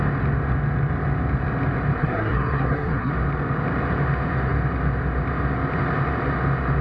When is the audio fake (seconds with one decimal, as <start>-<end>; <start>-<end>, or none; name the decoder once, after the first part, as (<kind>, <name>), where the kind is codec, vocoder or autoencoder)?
2.0-3.1 (codec, SNAC)